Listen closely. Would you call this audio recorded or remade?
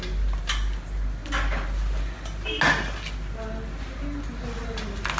recorded